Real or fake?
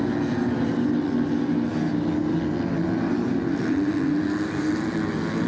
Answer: real